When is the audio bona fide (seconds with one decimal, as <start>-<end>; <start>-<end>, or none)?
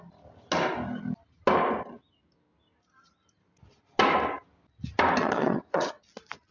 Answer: 0.0-5.2; 6.0-6.5